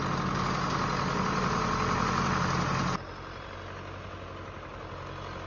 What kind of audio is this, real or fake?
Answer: real